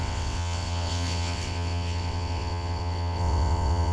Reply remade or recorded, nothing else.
remade